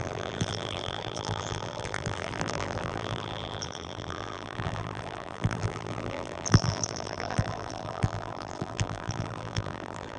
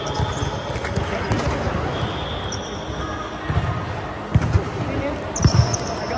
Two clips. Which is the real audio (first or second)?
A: second